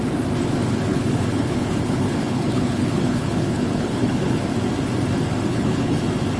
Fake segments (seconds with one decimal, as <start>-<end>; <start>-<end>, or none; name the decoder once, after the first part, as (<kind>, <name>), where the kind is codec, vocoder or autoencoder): 0.9-4.4 (codec, HILCodec); 5.5-6.0